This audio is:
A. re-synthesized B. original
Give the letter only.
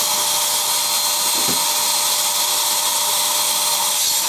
B